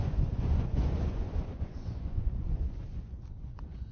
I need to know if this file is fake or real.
fake